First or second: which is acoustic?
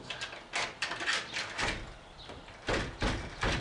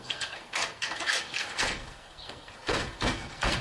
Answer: first